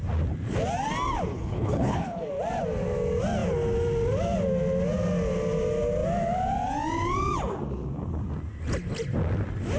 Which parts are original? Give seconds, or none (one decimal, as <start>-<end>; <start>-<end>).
0.0-1.3; 2.3-9.8